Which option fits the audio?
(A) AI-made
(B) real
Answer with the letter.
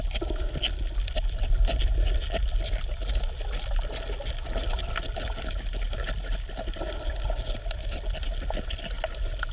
B